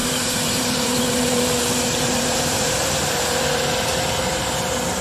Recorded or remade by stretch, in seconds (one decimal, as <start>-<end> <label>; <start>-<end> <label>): 0.0-3.0 remade; 3.0-5.0 recorded